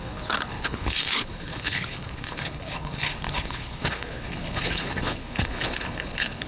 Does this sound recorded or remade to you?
remade